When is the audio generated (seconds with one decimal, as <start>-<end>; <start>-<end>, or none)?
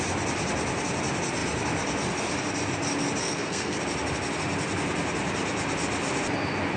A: 3.2-3.8